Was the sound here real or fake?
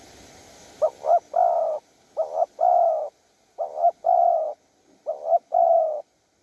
real